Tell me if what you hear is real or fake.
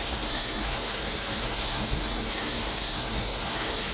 fake